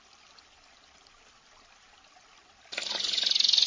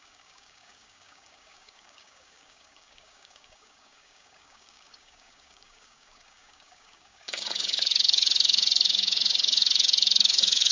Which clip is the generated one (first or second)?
second